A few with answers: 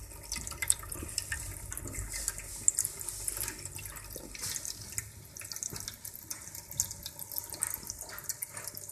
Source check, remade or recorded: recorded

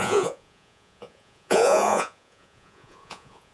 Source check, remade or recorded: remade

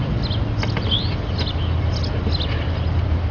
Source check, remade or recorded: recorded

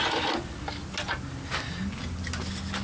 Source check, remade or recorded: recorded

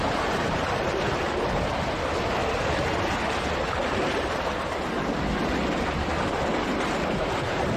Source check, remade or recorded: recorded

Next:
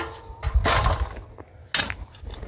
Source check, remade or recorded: recorded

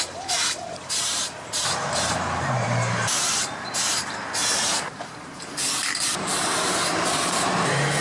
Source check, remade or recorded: remade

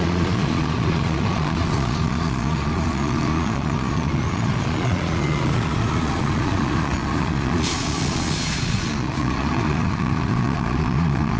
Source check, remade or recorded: remade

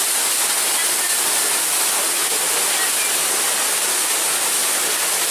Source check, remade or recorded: recorded